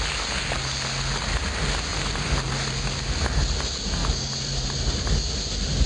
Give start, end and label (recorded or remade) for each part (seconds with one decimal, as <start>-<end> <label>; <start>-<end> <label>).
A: 0.0-1.9 recorded; 1.9-2.8 remade; 2.8-4.0 recorded; 4.0-5.0 remade; 5.0-5.9 recorded